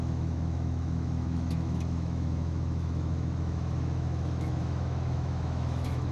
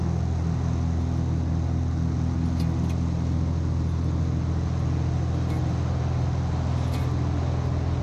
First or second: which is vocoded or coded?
first